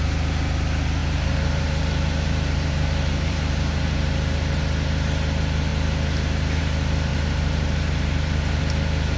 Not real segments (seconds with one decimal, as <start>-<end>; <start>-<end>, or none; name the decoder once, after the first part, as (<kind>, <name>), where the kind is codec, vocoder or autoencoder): 1.0-4.6 (vocoder, BigVGAN v2); 7.1-8.6